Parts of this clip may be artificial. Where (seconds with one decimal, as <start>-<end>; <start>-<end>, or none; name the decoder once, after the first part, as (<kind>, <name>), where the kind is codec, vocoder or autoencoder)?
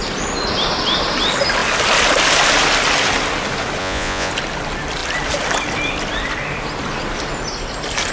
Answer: 3.8-4.3 (vocoder, Vocos)